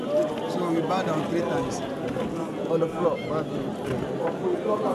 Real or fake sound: real